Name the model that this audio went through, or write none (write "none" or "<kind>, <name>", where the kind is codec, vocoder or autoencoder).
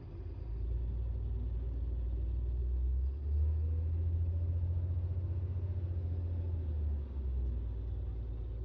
none